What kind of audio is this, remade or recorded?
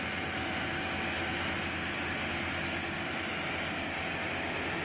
recorded